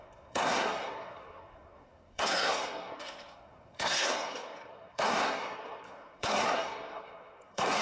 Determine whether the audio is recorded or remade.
remade